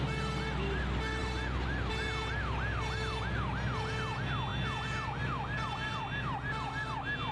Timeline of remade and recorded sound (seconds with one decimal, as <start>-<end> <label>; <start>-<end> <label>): 0.0-7.3 recorded